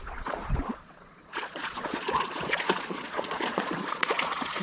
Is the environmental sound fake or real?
fake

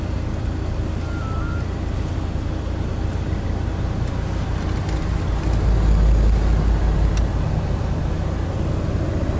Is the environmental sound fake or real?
real